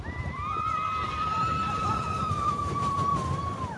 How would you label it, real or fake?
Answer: fake